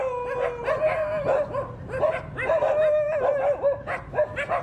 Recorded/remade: recorded